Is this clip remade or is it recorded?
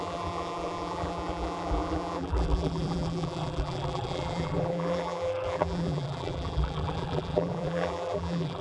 remade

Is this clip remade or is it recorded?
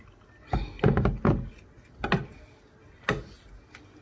recorded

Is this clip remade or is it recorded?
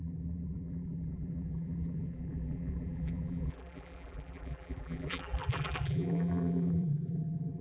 remade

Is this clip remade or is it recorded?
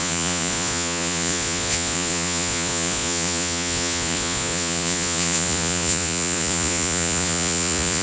remade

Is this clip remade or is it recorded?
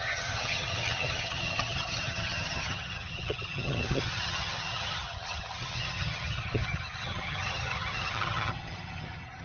remade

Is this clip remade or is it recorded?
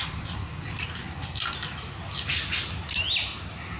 recorded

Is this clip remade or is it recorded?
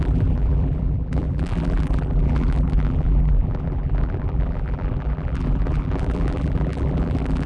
remade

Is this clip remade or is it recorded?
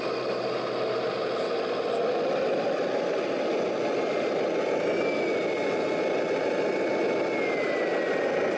recorded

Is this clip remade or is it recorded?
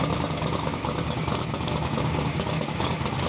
remade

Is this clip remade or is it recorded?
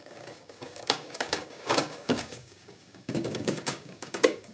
remade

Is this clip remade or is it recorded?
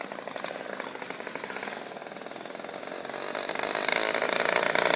recorded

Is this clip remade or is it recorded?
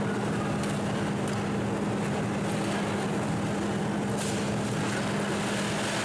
recorded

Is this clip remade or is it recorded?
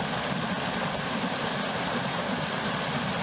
recorded